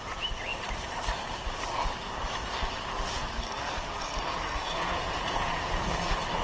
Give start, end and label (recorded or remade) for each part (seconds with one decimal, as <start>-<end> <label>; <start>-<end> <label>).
0.0-4.6 recorded; 4.6-5.8 remade; 5.8-6.4 recorded